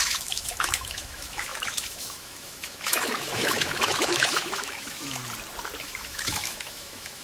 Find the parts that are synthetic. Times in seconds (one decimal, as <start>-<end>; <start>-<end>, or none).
0.0-5.2; 5.8-7.2